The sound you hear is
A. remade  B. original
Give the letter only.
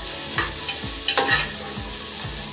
B